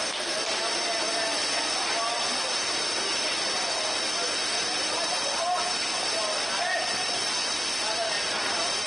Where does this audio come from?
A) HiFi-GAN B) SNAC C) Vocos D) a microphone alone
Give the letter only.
D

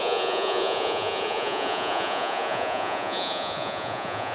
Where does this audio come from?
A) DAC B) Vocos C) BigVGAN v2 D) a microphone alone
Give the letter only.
B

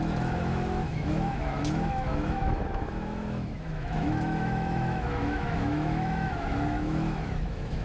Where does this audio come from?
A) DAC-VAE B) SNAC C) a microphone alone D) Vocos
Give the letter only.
A